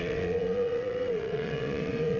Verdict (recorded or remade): remade